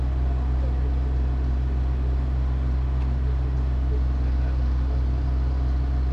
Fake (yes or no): no